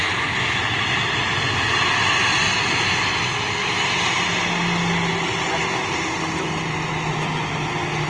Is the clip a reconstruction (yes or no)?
no